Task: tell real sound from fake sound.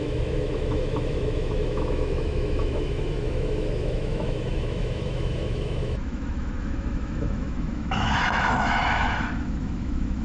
fake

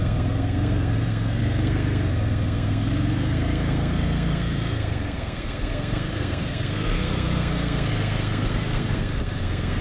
fake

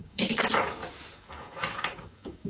fake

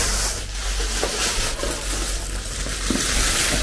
real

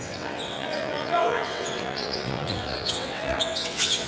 fake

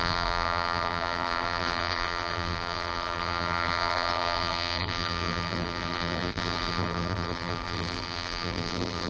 fake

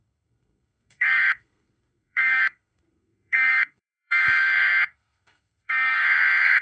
fake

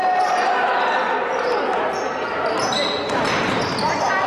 real